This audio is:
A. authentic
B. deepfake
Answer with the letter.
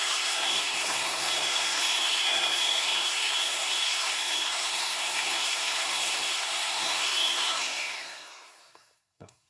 B